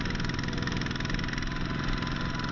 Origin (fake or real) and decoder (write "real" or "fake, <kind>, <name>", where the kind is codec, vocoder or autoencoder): real